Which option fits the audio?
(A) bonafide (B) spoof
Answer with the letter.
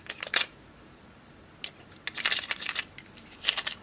A